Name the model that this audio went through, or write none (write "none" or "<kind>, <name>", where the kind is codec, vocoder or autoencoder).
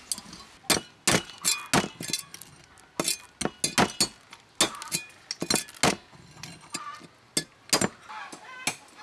none